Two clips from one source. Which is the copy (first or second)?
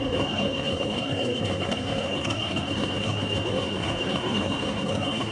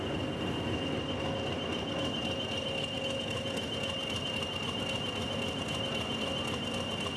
first